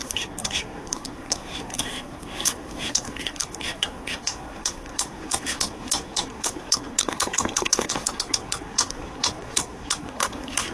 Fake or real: fake